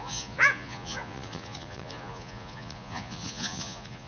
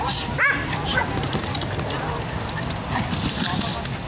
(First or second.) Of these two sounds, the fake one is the first